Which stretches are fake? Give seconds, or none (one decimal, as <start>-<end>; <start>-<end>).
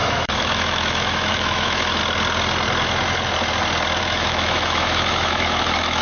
0.0-2.0; 4.0-6.0